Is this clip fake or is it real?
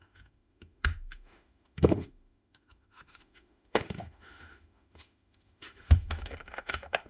fake